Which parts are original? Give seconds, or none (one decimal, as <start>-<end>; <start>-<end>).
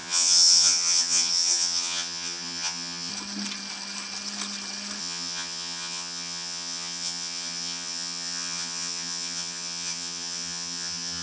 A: 3.1-5.0